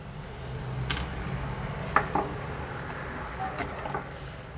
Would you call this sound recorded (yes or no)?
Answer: yes